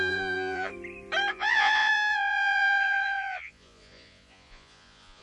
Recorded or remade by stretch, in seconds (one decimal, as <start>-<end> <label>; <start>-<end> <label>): 0.0-0.7 remade; 0.7-1.3 recorded; 1.3-5.2 remade